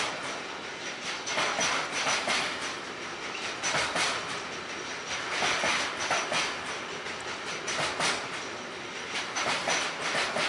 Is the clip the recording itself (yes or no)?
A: yes